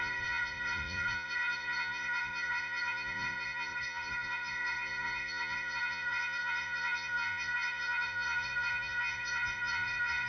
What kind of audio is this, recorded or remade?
remade